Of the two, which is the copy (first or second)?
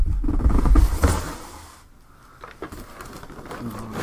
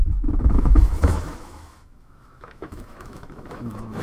second